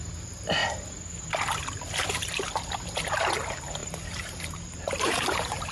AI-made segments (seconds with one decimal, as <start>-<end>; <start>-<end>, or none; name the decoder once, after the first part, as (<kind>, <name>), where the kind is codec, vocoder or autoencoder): 3.8-5.7 (vocoder, BigVGAN v2)